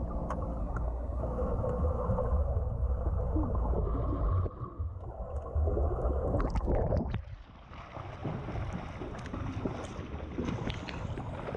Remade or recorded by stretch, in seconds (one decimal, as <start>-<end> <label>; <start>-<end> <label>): 0.0-0.6 recorded; 0.6-1.2 remade; 1.2-11.6 recorded

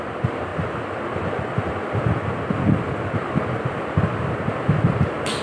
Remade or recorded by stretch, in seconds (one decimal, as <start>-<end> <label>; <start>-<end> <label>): 0.0-5.4 recorded

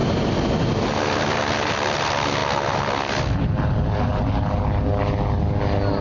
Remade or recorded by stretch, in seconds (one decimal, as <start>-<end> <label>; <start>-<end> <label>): 0.0-6.0 recorded

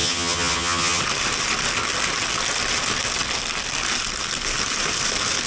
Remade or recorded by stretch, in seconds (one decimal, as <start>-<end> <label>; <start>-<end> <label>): 0.0-1.0 remade; 1.0-5.5 recorded

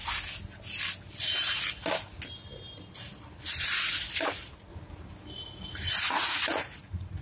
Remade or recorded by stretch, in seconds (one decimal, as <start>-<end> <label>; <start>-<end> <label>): 0.0-4.3 recorded; 4.3-4.7 remade; 4.7-6.1 recorded; 6.1-7.2 remade